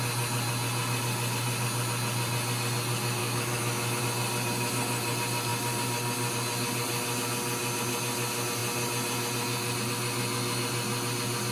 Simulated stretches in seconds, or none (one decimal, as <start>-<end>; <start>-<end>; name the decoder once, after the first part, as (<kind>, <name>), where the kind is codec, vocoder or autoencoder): 3.2-4.0 (autoencoder, DAC-VAE)